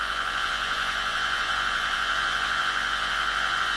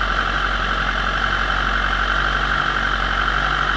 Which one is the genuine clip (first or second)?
second